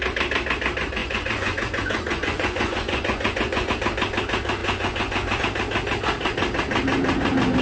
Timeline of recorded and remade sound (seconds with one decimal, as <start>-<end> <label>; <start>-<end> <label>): 0.0-1.0 recorded; 1.0-3.7 remade; 3.7-4.6 recorded; 4.6-5.4 remade; 5.4-7.6 recorded